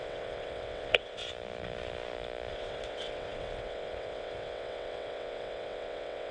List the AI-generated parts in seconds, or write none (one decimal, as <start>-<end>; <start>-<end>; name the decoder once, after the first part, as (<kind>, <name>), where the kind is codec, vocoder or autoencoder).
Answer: 0.0-1.2 (vocoder, WaveNeXt); 2.5-6.3